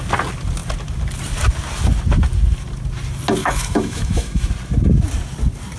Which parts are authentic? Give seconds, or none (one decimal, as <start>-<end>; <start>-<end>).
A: 0.0-3.4; 4.5-5.8